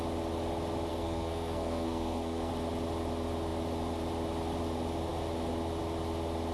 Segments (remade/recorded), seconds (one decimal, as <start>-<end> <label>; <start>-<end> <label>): 0.0-0.9 recorded; 0.9-2.5 remade; 2.5-6.5 recorded